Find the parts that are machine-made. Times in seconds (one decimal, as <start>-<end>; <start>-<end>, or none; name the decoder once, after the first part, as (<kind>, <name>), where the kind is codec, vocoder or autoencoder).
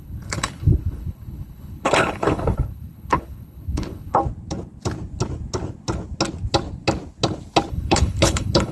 0.0-4.2 (codec, HILCodec); 7.7-8.7